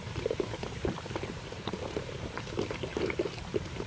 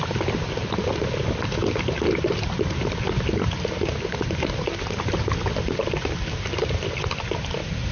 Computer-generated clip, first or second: first